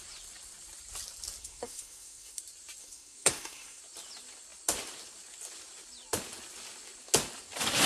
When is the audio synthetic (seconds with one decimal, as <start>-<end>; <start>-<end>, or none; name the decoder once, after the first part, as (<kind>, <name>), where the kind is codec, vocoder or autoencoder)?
1.4-2.4 (codec, SNAC); 2.8-3.8